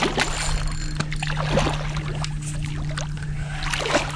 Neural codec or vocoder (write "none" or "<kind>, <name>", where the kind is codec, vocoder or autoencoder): none